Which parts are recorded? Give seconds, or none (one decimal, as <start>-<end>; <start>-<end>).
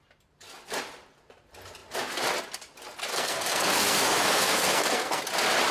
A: 0.0-3.1; 5.2-5.7